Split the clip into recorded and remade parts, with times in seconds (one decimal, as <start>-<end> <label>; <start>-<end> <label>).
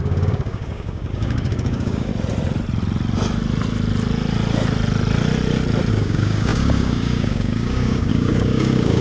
0.0-2.1 remade; 2.1-5.9 recorded; 5.9-9.0 remade